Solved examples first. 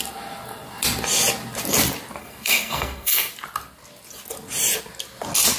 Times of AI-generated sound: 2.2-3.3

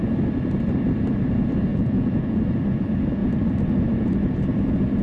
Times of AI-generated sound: 1.7-2.4

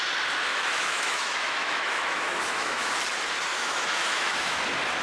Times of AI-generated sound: 0.5-2.9; 3.5-4.6

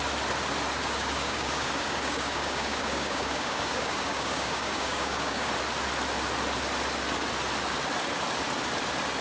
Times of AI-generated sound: 0.8-5.5

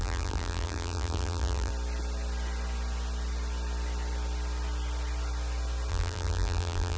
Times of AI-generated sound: 0.0-1.7; 5.9-7.0

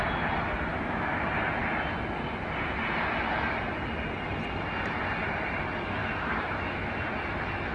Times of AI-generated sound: 0.7-1.2; 6.0-6.9

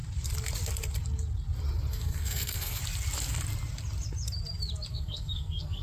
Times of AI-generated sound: 1.9-2.8; 4.9-5.8